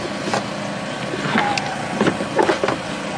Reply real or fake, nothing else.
real